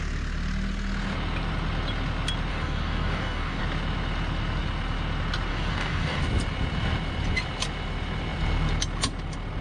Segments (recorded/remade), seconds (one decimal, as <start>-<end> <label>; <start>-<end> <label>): 0.0-2.5 recorded; 2.5-3.6 remade; 3.6-5.5 recorded; 5.5-6.2 remade; 6.2-9.6 recorded